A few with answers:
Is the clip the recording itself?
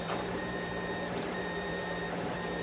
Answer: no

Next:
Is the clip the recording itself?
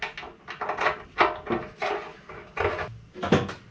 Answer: yes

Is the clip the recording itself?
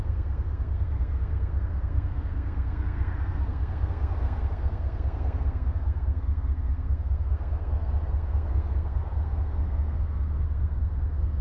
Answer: no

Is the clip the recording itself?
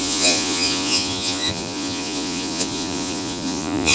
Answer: no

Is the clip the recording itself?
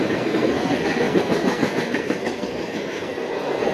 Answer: no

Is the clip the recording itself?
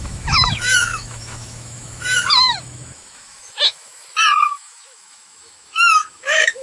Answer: no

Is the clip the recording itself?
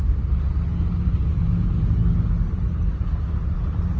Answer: yes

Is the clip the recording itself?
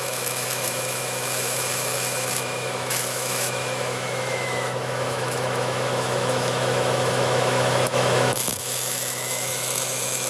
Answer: no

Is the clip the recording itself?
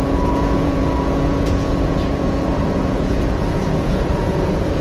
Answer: no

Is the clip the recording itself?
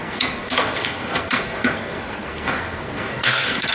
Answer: no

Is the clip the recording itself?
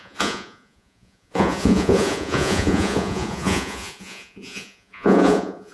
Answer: no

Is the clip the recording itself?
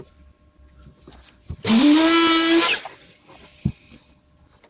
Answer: yes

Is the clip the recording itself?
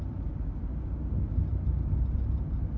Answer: yes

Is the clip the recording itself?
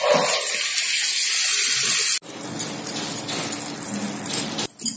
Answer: yes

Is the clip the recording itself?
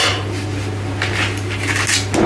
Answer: yes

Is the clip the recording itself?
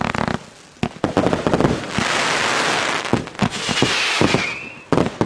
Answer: yes